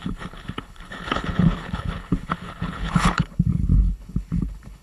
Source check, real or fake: fake